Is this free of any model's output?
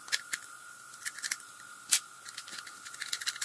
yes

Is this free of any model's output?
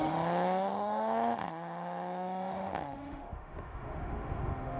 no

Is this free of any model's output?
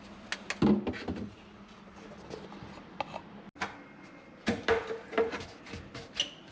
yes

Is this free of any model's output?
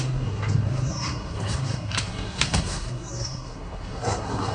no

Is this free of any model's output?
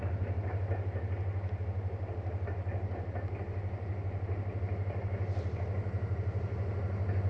yes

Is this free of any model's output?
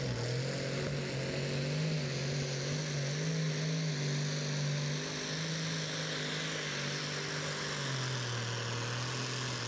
yes